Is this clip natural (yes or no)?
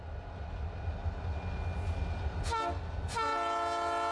yes